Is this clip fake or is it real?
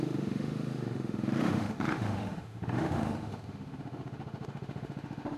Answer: fake